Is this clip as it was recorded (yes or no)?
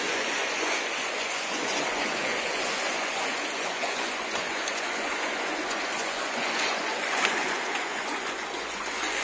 no